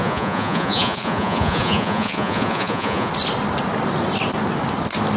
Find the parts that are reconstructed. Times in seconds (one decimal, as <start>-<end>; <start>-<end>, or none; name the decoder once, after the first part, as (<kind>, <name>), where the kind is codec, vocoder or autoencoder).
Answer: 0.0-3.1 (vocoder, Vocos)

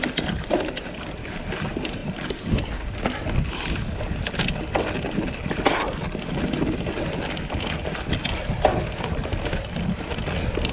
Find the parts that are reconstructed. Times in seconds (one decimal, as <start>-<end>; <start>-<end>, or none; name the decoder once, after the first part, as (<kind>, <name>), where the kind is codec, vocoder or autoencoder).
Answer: none

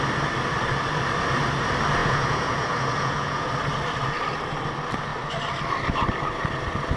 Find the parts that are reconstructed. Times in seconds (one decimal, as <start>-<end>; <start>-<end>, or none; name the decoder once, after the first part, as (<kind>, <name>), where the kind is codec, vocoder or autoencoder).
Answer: 2.0-3.5 (vocoder, Vocos)